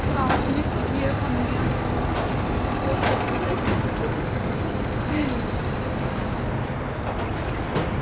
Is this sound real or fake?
real